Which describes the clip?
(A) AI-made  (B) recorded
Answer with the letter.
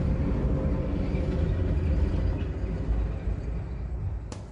B